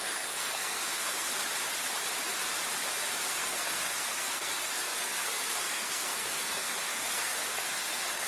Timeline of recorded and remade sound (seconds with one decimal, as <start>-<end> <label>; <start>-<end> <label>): 0.0-1.3 remade; 1.3-3.2 recorded; 3.2-8.3 remade